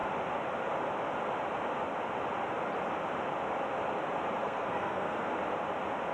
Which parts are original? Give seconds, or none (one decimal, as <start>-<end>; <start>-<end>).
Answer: 0.0-4.4; 5.3-6.1